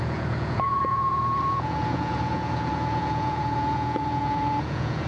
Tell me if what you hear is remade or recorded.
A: remade